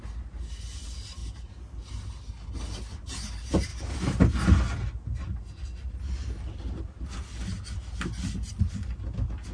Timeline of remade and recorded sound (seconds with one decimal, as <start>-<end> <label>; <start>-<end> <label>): 0.0-9.5 recorded